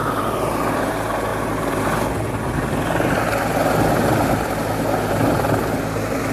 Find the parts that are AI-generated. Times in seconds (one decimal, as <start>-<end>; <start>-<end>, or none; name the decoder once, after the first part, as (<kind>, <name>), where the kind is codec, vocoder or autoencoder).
0.0-0.9 (vocoder, BigVGAN v2)